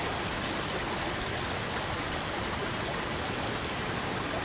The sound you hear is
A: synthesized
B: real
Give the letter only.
B